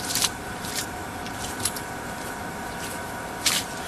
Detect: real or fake fake